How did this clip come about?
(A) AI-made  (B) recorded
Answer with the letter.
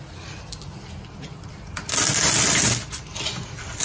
B